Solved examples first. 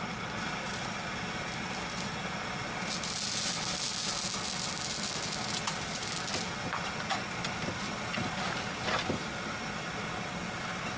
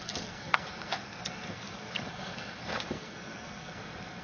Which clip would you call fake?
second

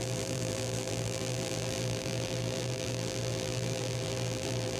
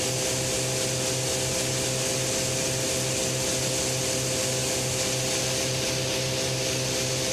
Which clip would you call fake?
first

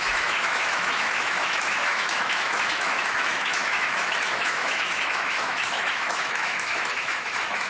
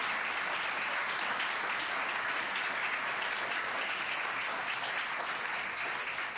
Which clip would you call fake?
first